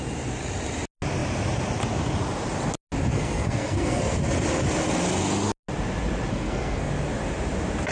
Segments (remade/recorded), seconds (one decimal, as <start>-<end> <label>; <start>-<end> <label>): 0.0-3.1 recorded; 3.1-4.2 remade; 4.2-6.3 recorded; 6.3-6.9 remade; 6.9-7.9 recorded